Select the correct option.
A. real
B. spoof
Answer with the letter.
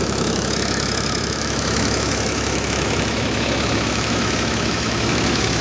B